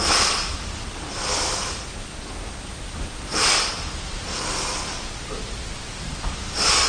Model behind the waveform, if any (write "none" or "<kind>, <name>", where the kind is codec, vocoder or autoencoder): none